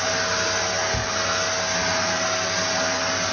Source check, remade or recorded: recorded